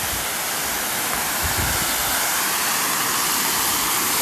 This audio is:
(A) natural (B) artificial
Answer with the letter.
A